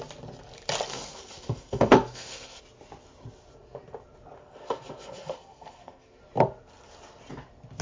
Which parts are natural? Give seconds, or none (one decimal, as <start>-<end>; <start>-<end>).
0.0-0.9; 2.6-4.4; 6.2-7.8